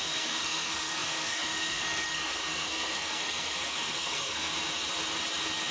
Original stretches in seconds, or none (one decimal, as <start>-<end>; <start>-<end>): 4.5-5.7